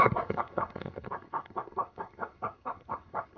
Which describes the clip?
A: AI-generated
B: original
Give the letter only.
A